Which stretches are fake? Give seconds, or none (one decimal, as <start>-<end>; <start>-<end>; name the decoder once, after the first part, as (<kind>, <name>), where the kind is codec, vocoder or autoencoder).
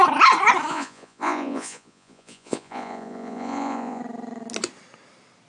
0.7-4.0 (vocoder, Vocos)